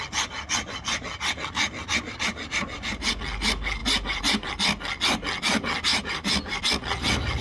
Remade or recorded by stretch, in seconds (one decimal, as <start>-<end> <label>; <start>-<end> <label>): 0.0-2.5 recorded; 2.5-3.1 remade; 3.1-3.8 recorded; 3.8-4.5 remade; 4.5-5.9 recorded; 5.9-6.6 remade; 6.6-7.4 recorded